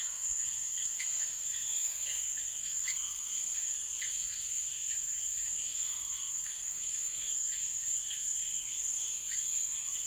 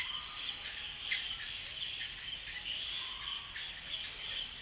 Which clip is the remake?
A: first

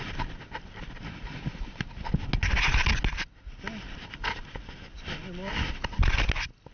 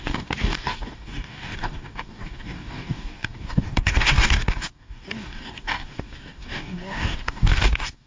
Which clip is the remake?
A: second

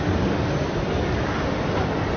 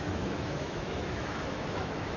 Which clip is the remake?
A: second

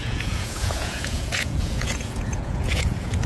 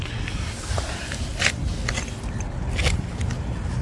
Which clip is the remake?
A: first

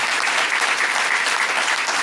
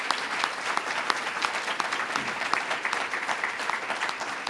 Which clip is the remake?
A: second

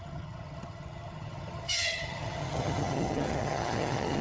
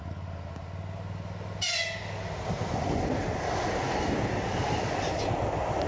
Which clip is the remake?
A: first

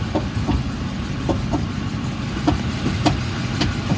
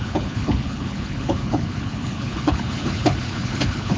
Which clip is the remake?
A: second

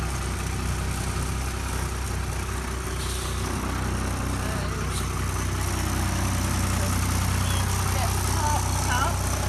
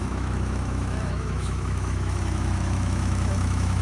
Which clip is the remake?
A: second